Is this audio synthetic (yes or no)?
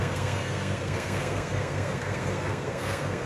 yes